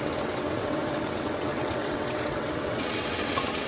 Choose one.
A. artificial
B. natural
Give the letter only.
A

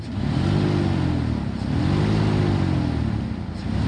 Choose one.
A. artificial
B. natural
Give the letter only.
B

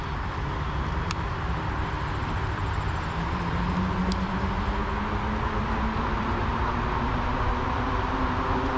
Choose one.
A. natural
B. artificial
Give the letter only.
A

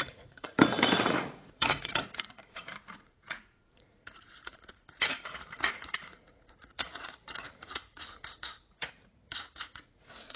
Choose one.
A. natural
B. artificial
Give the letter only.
B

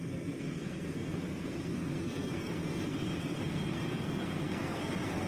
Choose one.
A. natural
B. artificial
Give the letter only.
B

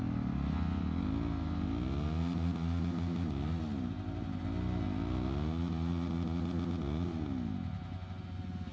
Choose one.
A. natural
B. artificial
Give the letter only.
A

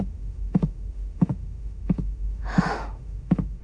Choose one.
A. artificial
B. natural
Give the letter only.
A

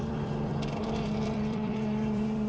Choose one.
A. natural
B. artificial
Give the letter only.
B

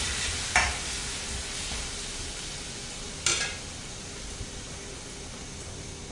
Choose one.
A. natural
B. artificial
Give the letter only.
A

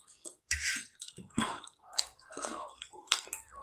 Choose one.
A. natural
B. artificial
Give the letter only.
B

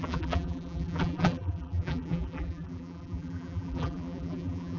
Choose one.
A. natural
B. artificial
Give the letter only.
B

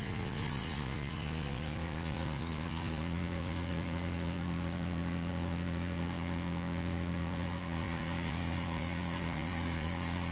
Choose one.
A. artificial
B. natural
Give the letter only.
A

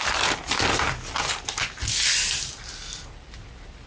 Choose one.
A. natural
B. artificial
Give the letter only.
A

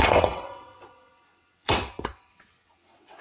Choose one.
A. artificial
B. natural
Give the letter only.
A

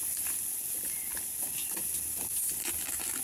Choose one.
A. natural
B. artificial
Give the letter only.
A